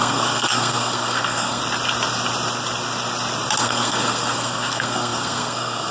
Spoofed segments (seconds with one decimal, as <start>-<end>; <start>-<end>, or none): 0.0-1.6; 3.6-5.9